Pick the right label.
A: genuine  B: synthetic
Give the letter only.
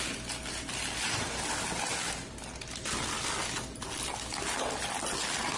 A